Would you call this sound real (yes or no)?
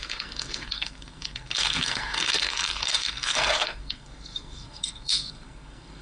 no